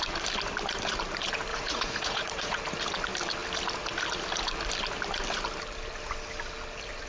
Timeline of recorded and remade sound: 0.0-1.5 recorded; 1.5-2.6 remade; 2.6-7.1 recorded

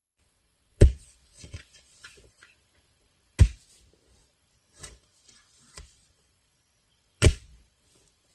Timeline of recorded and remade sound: 0.0-3.4 remade; 3.4-4.2 recorded; 4.2-8.3 remade

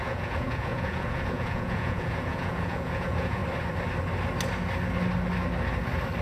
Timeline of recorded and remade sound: 0.0-3.4 remade; 3.4-6.2 recorded

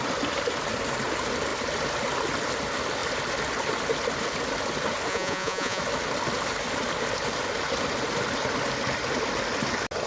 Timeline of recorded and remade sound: 0.0-5.1 recorded; 5.1-5.8 remade; 5.8-10.1 recorded

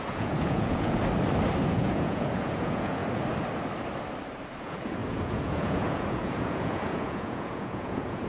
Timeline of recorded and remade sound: 0.0-1.0 remade; 1.0-1.7 recorded; 1.7-3.0 remade; 3.0-4.6 recorded; 4.6-8.3 remade